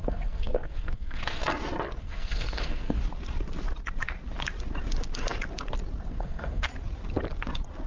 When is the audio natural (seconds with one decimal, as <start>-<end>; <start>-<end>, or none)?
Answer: 1.4-2.0; 3.0-6.1; 6.7-7.9